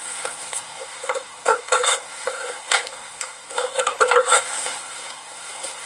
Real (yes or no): no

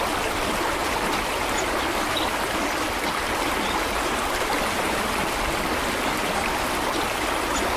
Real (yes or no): yes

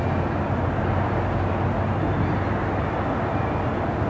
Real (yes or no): yes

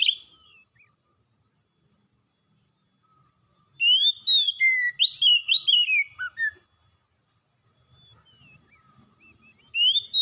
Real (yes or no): yes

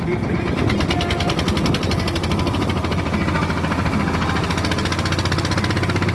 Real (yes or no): yes